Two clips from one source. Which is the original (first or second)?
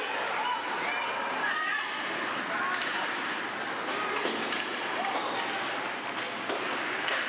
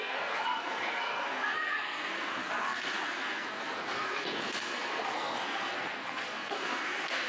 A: first